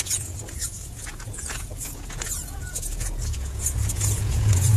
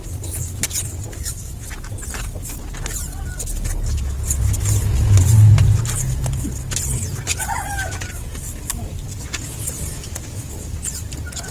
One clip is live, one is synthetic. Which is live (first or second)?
second